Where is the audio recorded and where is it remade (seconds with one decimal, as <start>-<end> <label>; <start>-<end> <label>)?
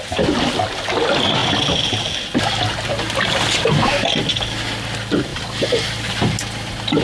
0.0-5.3 recorded; 5.3-6.3 remade; 6.3-7.0 recorded